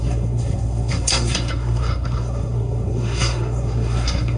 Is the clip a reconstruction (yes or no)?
yes